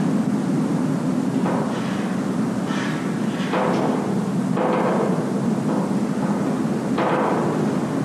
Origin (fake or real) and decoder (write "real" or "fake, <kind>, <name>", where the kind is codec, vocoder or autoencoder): real